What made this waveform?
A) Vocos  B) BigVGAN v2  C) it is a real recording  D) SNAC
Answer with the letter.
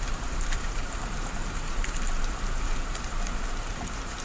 B